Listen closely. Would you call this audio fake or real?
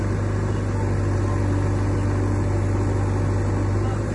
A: real